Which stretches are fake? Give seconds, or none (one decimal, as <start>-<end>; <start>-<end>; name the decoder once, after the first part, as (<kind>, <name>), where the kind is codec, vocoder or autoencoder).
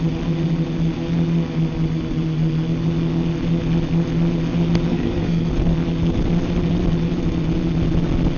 4.9-5.5 (codec, SNAC)